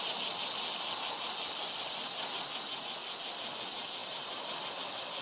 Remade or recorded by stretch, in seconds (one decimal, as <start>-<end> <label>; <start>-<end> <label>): 0.0-5.2 recorded